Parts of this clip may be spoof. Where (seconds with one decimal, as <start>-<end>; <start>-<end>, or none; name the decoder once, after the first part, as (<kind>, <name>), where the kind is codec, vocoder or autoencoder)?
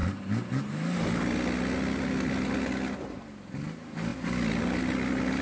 none